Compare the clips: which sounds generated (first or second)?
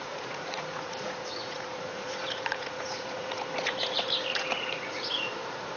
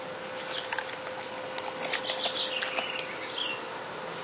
first